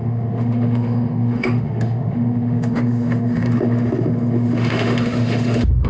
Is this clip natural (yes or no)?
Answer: no